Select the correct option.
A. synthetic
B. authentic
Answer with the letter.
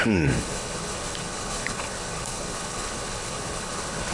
A